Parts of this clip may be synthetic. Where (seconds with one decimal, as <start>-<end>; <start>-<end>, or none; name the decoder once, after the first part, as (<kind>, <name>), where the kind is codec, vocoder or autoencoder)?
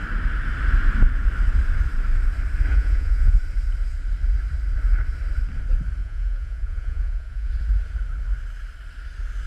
2.7-3.4 (vocoder, Vocos); 6.0-7.5